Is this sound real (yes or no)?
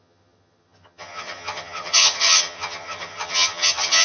no